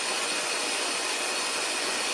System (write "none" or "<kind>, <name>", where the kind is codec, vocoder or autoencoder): vocoder, Vocos